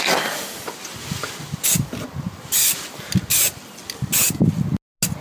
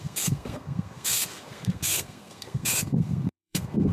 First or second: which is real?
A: first